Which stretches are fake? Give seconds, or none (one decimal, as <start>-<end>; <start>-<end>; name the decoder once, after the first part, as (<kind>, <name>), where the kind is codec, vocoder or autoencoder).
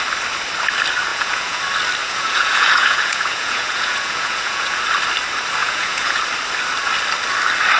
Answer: 1.1-1.6 (vocoder, Vocos); 2.0-4.8; 5.6-6.2